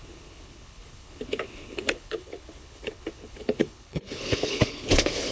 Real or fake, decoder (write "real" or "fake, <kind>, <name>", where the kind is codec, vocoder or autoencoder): fake, codec, HILCodec